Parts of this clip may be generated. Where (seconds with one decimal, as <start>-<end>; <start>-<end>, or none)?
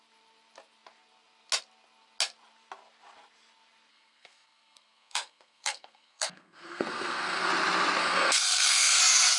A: 3.9-7.5; 8.0-9.0